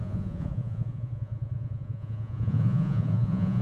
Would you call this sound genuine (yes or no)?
no